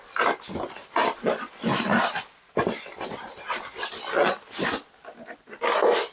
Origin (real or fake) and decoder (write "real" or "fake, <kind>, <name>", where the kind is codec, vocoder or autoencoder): real